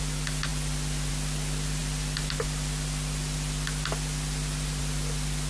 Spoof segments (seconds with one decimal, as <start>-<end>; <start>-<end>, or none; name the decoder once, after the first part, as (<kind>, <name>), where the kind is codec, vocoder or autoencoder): none